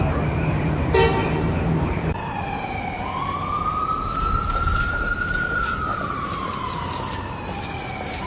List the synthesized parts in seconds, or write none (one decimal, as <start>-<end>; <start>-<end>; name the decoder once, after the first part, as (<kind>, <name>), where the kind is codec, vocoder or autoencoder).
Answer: 0.0-3.0 (vocoder, BigVGAN v2); 5.9-7.2